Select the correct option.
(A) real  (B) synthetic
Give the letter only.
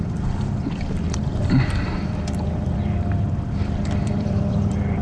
B